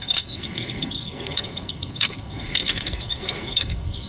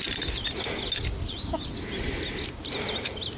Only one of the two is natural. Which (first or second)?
second